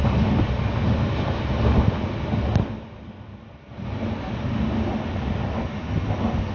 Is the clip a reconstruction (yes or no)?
no